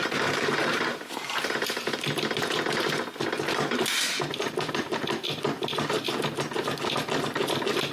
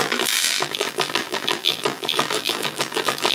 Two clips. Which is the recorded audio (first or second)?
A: first